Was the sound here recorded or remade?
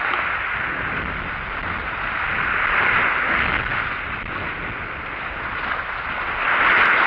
recorded